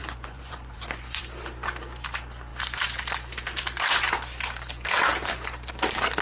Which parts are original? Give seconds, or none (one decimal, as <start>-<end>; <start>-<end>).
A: 1.2-6.2